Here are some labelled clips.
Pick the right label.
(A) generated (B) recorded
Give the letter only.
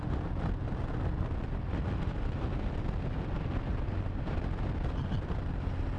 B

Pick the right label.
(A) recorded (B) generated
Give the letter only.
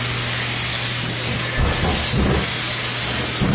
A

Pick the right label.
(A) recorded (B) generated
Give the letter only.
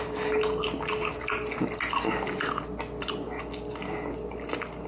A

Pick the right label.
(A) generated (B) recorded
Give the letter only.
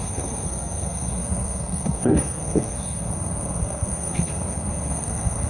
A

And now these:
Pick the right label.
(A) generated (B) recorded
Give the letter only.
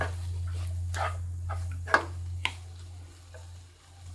B